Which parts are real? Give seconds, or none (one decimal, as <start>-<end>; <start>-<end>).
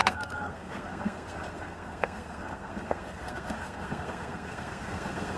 none